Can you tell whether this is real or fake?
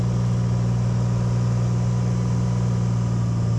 real